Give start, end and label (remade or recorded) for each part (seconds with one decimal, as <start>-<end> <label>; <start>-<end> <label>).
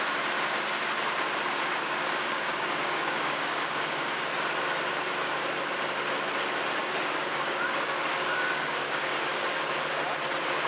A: 0.0-1.7 recorded; 1.7-4.2 remade; 4.2-6.8 recorded; 6.8-9.7 remade; 9.7-10.7 recorded